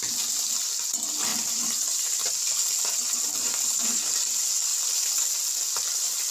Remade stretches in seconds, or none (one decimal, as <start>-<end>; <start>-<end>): 1.3-2.4; 4.7-5.3